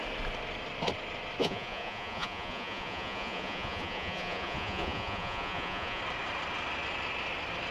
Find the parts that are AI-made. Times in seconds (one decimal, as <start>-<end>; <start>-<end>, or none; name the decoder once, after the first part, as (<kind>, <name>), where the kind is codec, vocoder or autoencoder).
1.4-6.0 (vocoder, Vocos)